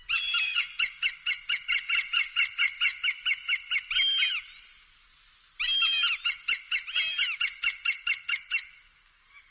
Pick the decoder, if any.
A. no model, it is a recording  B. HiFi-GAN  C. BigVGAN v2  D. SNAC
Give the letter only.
A